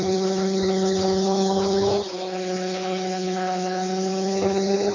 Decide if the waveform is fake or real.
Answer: fake